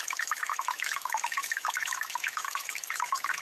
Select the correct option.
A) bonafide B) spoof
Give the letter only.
B